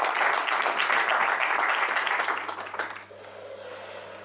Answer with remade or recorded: recorded